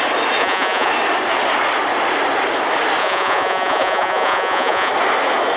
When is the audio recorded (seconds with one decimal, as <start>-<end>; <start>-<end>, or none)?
0.0-0.4; 0.9-3.0; 4.9-5.6